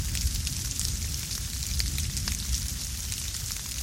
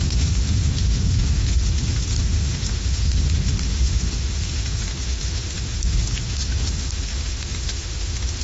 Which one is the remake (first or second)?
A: second